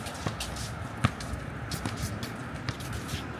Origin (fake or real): real